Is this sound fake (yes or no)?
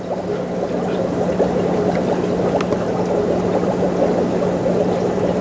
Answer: no